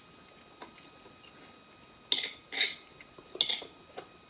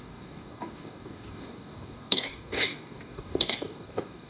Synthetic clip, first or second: second